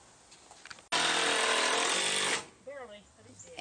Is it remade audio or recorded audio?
recorded